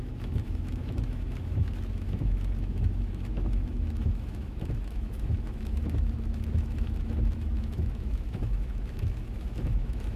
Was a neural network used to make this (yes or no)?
yes